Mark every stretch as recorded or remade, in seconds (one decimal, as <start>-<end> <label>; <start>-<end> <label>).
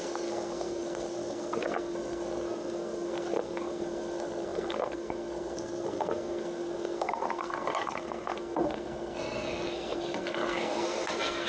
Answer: 0.0-11.5 remade